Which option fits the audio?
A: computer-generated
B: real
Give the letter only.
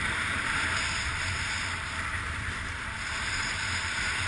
A